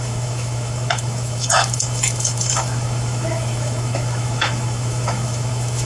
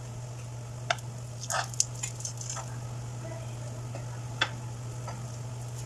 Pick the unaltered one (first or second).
second